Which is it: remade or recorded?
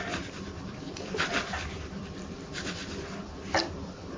remade